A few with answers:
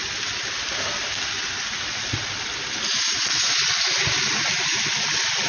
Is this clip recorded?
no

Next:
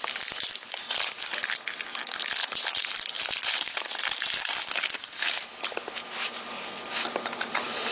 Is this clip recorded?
yes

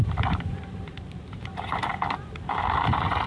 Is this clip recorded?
no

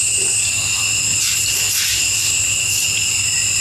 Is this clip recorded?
yes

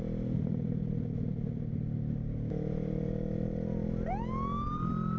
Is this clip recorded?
yes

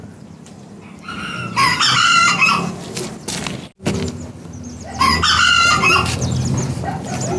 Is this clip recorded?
yes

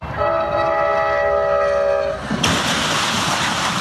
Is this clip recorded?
yes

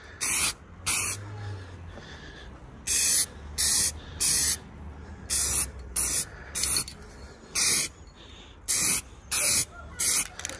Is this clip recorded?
yes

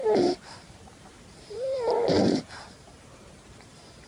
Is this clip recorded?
no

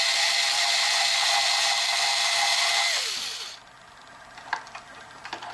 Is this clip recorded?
no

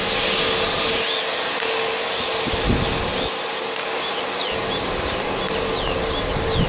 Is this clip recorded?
yes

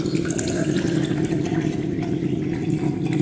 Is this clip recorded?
yes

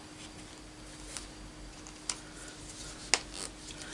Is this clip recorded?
yes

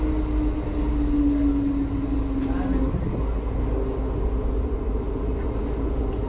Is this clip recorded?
yes